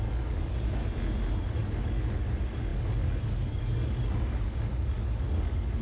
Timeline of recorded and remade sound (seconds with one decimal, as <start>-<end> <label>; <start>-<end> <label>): 0.0-0.8 remade; 0.8-1.4 recorded; 1.4-5.8 remade